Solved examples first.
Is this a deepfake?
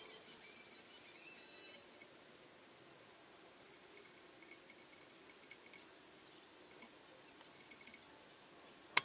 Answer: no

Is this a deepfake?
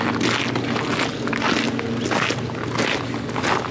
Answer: no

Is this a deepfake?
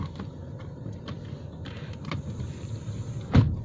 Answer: no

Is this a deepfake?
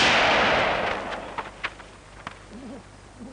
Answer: no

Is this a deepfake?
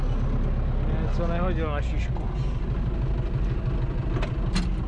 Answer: no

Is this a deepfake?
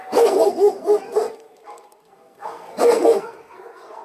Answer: yes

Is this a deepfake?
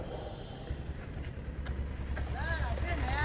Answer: no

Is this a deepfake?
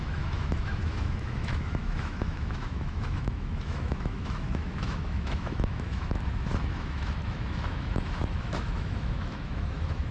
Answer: yes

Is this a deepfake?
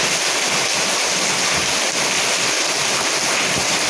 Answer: no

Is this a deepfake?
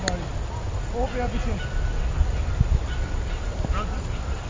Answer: no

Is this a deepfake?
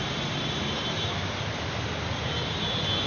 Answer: no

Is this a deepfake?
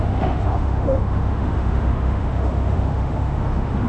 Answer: yes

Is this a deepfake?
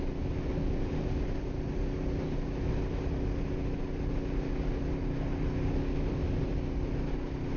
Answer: no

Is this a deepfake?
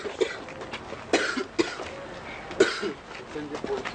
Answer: no